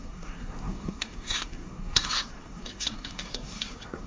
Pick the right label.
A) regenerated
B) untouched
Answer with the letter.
A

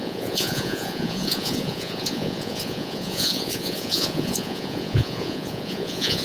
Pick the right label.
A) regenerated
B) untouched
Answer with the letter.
A